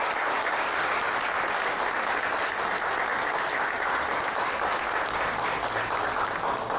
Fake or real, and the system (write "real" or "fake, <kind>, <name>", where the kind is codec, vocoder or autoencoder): real